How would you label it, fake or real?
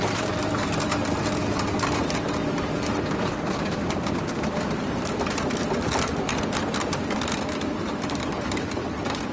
fake